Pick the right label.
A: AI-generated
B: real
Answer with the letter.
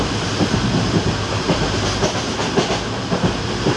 B